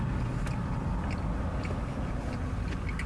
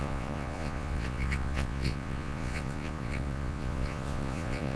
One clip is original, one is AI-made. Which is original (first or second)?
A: first